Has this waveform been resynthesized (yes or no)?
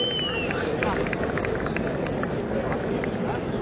no